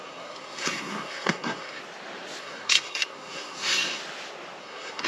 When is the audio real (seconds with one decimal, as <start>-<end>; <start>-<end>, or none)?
1.8-2.4; 4.0-4.6